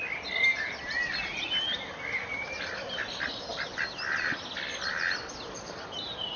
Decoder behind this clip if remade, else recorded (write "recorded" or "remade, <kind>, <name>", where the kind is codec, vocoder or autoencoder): recorded